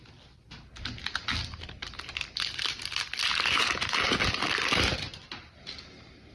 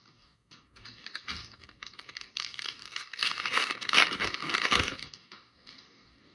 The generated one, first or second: second